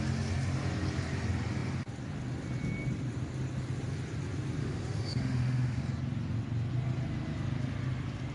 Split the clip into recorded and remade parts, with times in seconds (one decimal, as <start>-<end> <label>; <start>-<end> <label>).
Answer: 0.0-4.6 recorded; 4.6-5.8 remade; 5.8-8.3 recorded